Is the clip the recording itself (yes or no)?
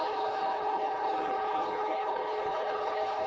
no